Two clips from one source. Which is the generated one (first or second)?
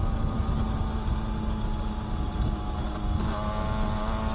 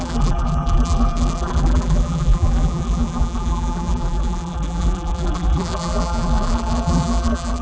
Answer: second